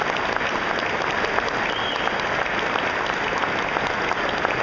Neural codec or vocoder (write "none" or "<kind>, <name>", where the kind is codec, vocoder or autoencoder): none